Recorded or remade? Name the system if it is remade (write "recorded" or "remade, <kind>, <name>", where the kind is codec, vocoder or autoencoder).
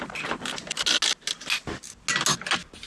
recorded